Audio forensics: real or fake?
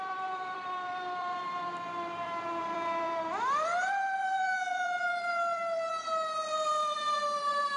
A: fake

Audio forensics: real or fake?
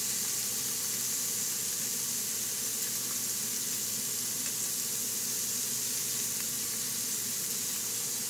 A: real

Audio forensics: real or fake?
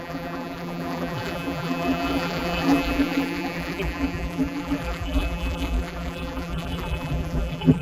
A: fake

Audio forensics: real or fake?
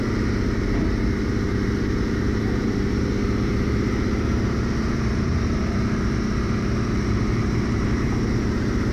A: fake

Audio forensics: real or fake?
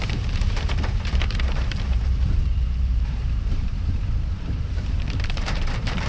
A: fake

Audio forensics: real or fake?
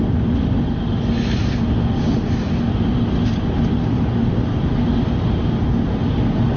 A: real